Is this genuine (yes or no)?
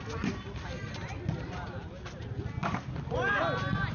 yes